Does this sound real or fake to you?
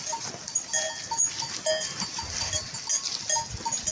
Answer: real